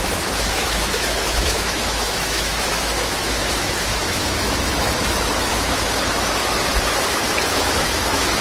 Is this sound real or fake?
fake